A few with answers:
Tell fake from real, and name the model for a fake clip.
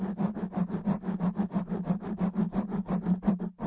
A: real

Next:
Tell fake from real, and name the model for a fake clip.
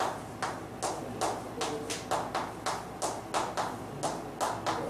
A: real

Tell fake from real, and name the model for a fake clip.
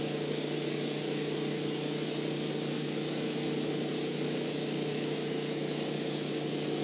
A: fake, codec, DAC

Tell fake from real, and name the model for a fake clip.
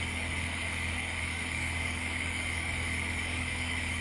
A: fake, codec, DAC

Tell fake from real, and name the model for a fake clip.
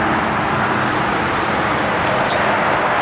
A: real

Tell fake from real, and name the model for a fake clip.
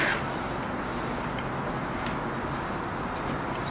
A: real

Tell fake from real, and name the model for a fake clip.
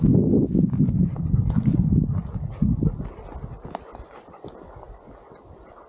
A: real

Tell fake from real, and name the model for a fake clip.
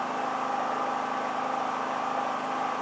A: real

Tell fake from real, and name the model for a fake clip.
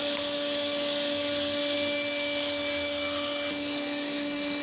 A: fake, codec, DAC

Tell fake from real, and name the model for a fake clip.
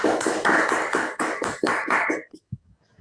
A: fake, codec, DAC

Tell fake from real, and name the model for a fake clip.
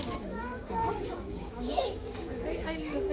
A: fake, codec, DAC